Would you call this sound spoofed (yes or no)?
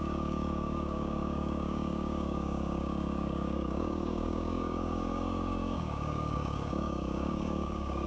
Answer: yes